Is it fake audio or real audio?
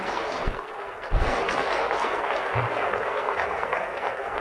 fake